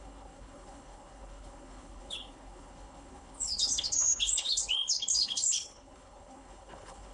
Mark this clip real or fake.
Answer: fake